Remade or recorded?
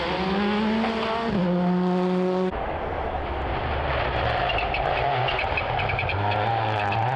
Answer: recorded